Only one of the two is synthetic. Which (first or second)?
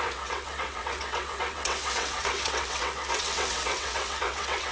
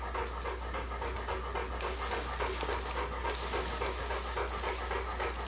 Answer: first